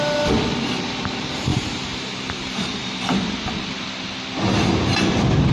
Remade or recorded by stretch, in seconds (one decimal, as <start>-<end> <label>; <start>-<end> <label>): 0.0-1.5 recorded; 1.5-3.1 remade; 3.1-5.5 recorded